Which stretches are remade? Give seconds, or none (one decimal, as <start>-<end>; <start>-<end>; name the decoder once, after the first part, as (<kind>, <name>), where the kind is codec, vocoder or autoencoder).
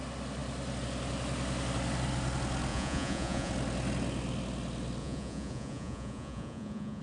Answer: 2.7-3.5 (vocoder, Vocos); 5.0-7.0